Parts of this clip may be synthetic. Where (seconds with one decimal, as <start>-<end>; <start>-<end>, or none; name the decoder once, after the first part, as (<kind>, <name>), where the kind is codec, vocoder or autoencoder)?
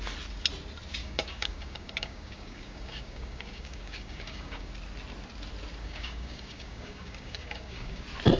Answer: 1.0-4.7 (codec, DAC); 5.8-8.0